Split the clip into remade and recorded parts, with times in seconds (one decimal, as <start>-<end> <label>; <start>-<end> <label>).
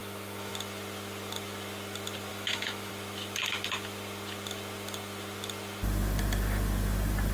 0.0-0.5 remade; 0.5-2.3 recorded; 2.3-2.9 remade; 2.9-7.3 recorded